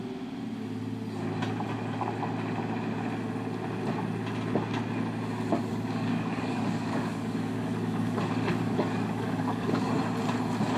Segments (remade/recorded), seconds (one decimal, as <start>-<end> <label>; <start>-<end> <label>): 0.0-5.7 recorded; 5.7-10.0 remade; 10.0-10.8 recorded